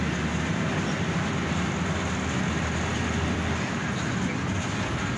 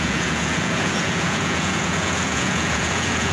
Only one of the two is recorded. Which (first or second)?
first